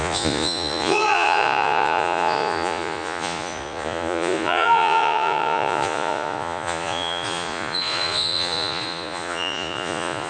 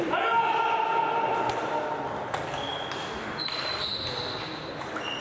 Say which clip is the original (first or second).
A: second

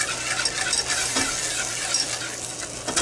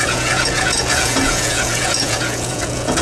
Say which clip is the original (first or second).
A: first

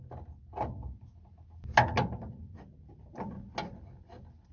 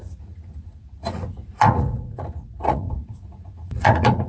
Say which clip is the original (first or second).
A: first